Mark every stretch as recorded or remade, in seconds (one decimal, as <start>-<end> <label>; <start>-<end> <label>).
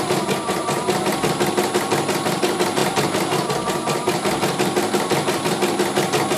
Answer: 0.0-6.4 recorded